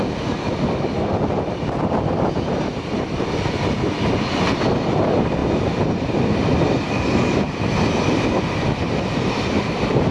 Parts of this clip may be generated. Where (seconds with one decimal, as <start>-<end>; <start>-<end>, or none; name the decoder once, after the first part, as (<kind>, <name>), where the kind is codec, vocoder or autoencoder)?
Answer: none